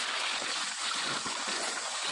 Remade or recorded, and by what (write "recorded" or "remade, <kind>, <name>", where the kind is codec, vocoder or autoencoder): remade, vocoder, Vocos